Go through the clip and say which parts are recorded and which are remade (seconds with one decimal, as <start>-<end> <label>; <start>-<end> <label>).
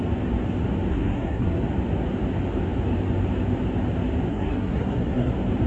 0.0-0.9 recorded; 0.9-1.6 remade; 1.6-4.3 recorded; 4.3-5.3 remade; 5.3-5.7 recorded